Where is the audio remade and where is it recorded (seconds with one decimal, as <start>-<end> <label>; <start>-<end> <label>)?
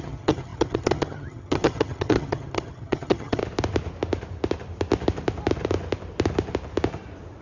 0.0-3.4 remade; 3.4-7.4 recorded